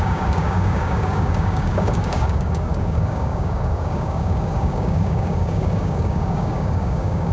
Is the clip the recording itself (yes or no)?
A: no